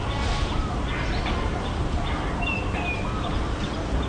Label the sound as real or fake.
real